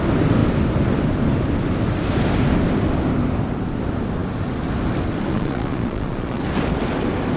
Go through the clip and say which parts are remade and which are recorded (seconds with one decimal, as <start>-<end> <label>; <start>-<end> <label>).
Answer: 0.0-5.3 recorded; 5.3-6.4 remade; 6.4-7.4 recorded